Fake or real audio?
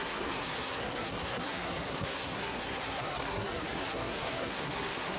fake